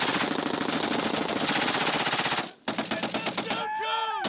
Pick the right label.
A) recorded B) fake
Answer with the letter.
A